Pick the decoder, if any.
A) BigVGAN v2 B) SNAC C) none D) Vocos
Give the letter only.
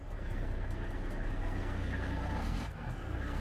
B